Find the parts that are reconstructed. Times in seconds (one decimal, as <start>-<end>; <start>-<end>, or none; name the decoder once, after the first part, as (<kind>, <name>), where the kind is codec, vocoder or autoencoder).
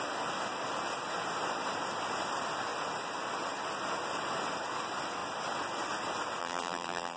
6.4-7.2 (vocoder, BigVGAN v2)